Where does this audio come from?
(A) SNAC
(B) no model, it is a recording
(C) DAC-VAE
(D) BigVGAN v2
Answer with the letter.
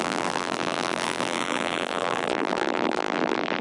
D